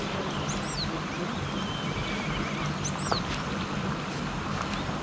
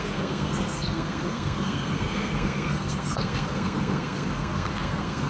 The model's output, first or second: second